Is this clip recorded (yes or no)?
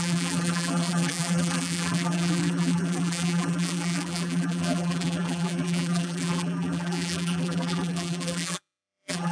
no